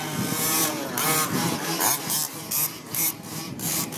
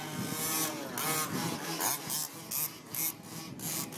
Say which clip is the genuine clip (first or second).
second